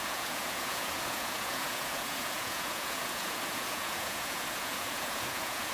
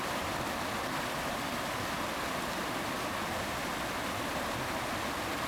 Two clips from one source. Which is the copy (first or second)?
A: first